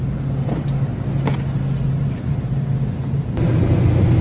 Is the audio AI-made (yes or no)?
no